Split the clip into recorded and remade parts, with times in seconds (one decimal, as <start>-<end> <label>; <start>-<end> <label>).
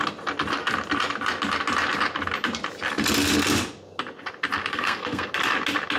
0.0-4.7 recorded; 4.7-5.3 remade; 5.3-6.0 recorded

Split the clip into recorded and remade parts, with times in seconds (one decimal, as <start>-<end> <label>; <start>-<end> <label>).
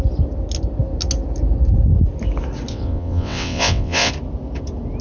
0.0-2.7 recorded; 2.7-4.1 remade; 4.1-5.0 recorded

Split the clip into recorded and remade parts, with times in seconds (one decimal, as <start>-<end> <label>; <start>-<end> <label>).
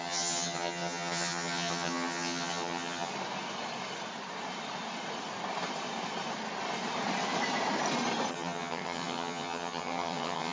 0.0-3.1 remade; 3.1-8.3 recorded; 8.3-10.5 remade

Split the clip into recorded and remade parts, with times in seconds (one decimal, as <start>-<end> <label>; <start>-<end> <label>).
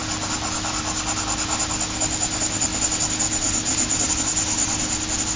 0.0-5.4 recorded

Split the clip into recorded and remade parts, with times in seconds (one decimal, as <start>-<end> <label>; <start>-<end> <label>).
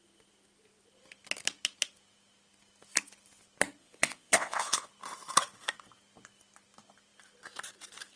0.0-3.8 recorded; 3.8-4.9 remade; 4.9-8.2 recorded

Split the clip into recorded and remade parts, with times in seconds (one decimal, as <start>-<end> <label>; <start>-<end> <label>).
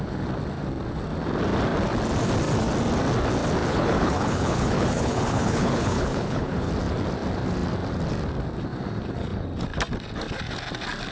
0.0-3.7 recorded; 3.7-6.7 remade; 6.7-11.1 recorded